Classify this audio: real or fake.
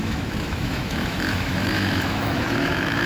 fake